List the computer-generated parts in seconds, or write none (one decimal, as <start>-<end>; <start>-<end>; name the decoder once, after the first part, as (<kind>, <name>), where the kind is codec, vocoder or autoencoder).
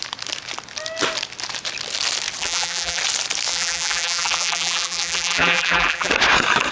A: 2.4-3.0 (vocoder, BigVGAN v2); 3.5-6.1